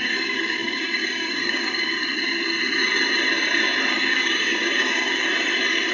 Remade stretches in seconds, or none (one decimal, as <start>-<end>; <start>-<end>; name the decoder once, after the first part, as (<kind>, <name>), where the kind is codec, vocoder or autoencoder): 0.0-2.0 (codec, DAC); 3.9-5.3